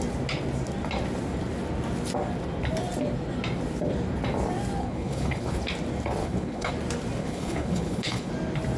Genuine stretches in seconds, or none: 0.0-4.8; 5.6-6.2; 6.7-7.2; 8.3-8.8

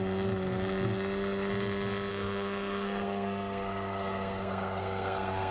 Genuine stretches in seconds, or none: 0.0-2.1

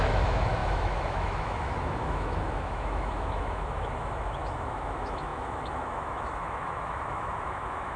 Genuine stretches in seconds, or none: none

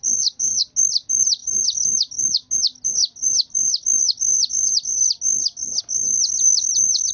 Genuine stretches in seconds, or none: 0.0-7.1

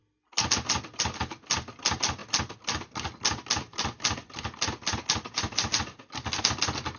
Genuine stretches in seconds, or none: 0.0-7.0

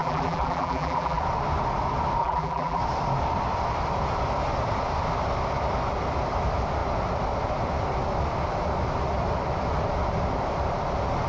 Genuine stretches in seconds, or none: 1.2-2.2; 2.8-11.3

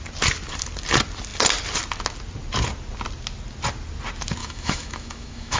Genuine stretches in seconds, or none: 0.0-4.4

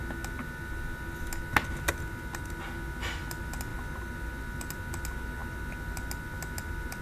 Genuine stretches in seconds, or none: 0.0-7.0